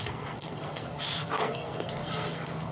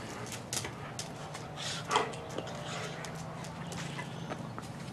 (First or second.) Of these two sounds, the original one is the second